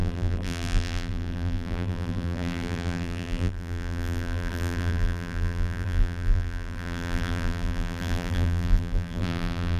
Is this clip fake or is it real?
fake